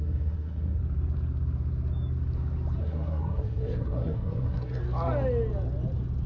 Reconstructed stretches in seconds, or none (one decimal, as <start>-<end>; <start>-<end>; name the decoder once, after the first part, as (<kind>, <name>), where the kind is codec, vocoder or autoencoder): 0.0-0.8 (codec, SNAC); 2.8-4.8